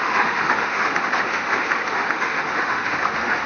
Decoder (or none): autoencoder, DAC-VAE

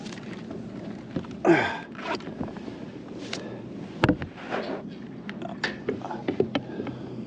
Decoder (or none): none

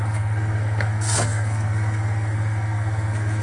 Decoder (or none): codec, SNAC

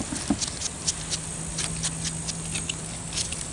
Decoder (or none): none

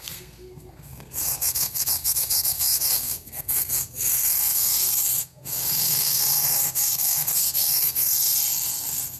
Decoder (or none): codec, SNAC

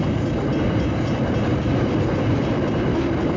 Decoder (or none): none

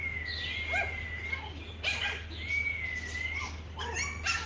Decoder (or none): none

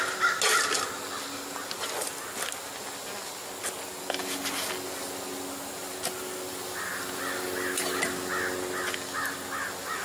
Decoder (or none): none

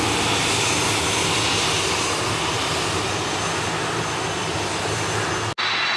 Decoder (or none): none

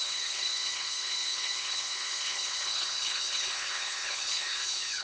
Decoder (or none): codec, HILCodec